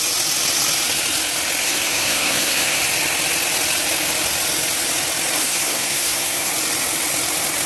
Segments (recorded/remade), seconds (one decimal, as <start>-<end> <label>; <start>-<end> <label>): 0.0-1.6 recorded; 1.6-2.8 remade; 2.8-5.4 recorded; 5.4-6.5 remade; 6.5-7.7 recorded